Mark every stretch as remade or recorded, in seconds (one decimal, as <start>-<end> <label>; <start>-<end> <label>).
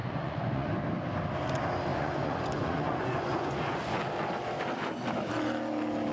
0.0-0.7 remade; 0.7-1.9 recorded; 1.9-4.0 remade; 4.0-6.1 recorded